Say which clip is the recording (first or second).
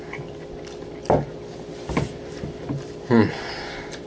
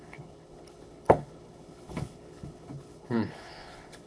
first